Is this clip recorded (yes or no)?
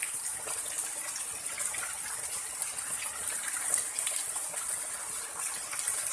yes